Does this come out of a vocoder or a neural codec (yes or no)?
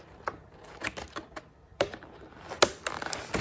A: no